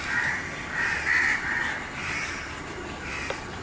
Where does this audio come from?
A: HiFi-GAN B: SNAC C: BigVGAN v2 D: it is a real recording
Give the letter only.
D